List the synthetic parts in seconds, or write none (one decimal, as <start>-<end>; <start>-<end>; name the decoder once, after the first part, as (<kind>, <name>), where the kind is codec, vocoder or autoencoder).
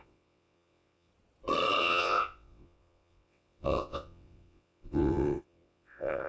0.0-1.1 (vocoder, WaveNeXt); 1.8-6.3